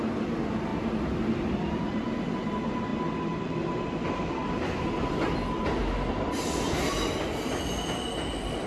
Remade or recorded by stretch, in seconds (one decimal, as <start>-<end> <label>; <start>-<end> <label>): 0.0-8.7 recorded